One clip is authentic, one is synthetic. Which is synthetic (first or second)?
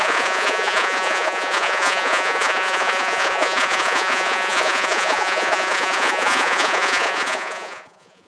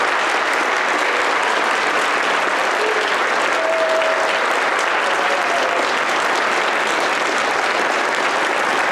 first